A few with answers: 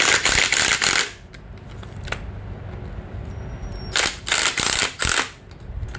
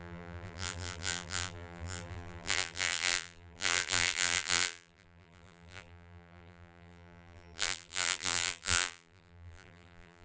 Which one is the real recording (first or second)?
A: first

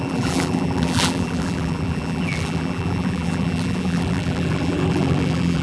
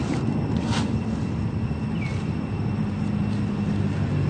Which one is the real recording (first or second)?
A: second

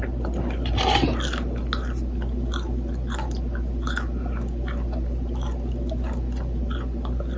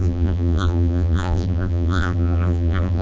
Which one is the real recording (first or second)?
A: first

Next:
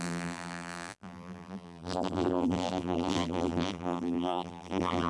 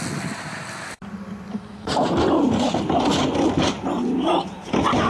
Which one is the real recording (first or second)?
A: second